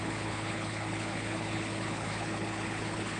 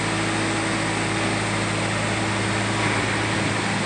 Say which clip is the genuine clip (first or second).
second